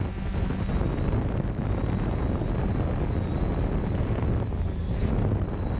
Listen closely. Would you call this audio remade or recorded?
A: recorded